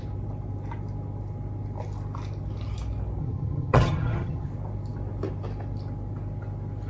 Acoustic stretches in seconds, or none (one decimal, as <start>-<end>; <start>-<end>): 0.0-3.2; 4.5-6.9

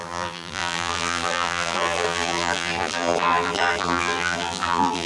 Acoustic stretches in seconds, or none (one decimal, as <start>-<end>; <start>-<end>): none

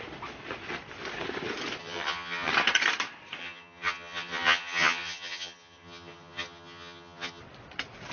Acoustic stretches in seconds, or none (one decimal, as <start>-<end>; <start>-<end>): 0.0-1.8; 2.5-3.4; 7.4-8.1

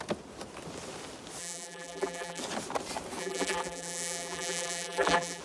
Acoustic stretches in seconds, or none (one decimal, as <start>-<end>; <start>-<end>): 0.0-1.4; 2.4-3.2

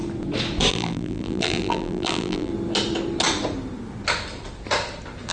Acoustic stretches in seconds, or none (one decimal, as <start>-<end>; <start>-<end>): 0.0-0.7; 2.5-5.3

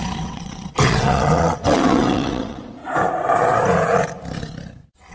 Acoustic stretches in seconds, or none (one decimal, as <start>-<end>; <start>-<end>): 2.8-5.1

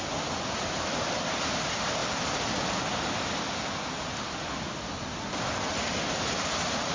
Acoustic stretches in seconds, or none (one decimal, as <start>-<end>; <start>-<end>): 0.0-6.9

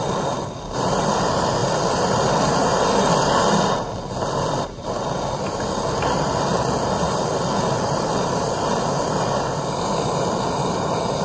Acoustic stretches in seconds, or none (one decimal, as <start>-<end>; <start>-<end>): 0.0-11.2